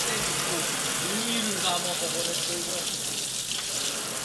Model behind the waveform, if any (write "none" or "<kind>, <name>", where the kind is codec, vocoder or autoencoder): none